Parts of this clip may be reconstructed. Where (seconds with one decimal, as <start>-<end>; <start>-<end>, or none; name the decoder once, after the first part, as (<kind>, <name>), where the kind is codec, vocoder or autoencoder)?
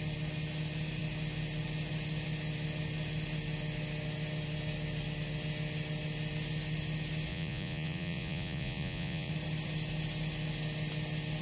7.3-9.3 (vocoder, Vocos)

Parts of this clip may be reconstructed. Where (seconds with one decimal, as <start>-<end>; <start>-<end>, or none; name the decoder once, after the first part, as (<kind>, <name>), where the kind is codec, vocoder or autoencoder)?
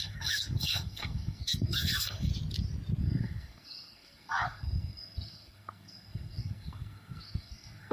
0.0-2.3 (codec, SNAC); 3.0-7.9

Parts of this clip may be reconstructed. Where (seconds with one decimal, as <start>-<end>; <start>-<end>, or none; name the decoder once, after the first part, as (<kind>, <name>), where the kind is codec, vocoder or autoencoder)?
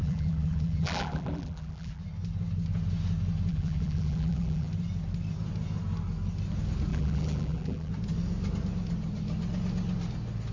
0.0-2.0 (vocoder, BigVGAN v2); 3.5-4.7; 6.9-7.9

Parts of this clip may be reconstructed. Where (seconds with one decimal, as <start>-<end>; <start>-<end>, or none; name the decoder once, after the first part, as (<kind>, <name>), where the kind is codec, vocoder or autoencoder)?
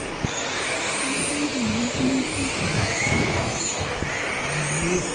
2.7-4.0 (autoencoder, DAC-VAE)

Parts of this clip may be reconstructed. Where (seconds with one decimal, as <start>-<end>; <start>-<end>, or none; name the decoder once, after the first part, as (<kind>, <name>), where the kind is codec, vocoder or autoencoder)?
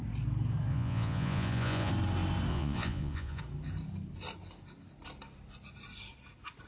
0.7-1.9 (vocoder, Vocos); 2.5-3.4